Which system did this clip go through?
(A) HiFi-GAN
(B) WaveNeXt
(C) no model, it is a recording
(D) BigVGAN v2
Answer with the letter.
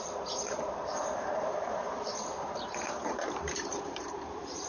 D